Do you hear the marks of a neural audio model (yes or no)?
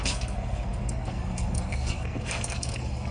yes